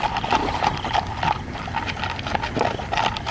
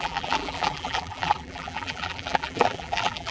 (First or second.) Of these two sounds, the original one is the first